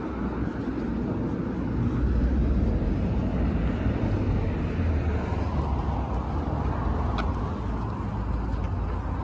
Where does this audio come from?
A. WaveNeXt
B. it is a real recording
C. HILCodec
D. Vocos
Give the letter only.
B